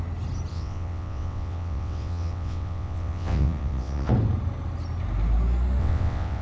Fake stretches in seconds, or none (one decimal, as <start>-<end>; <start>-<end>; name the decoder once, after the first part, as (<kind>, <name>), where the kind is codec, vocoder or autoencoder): 0.5-4.1 (vocoder, WaveNeXt); 5.8-6.4